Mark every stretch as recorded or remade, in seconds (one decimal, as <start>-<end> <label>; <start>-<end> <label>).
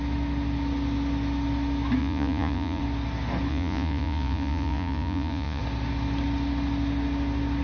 0.0-2.0 recorded; 2.0-2.8 remade; 2.8-3.5 recorded; 3.5-5.6 remade; 5.6-7.6 recorded